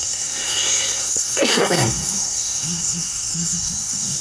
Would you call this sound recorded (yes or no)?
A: no